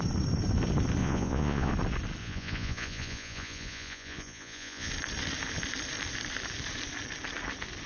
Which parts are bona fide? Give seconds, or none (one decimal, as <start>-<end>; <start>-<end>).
0.0-1.0; 1.7-2.2; 4.9-7.9